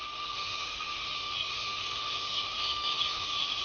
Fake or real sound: fake